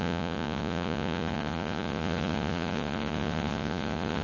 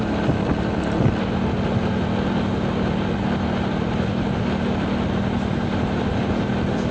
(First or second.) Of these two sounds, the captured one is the second